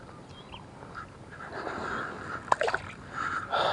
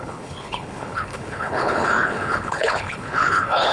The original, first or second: first